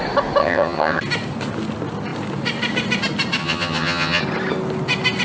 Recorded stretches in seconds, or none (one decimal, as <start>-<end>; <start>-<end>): 0.0-0.4; 1.0-3.4; 4.2-5.2